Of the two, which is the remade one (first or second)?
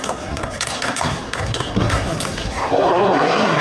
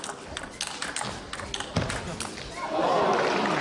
first